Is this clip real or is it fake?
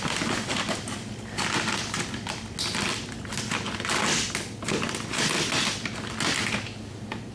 real